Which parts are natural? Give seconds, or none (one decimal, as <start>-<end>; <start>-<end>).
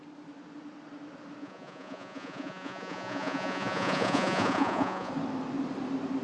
0.0-1.4; 5.1-6.2